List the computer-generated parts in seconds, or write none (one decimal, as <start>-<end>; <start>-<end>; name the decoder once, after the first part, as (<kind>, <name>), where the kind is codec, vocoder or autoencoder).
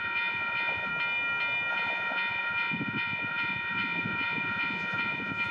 0.0-0.9 (vocoder, Vocos); 1.7-5.5